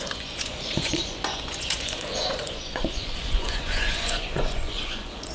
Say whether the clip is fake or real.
fake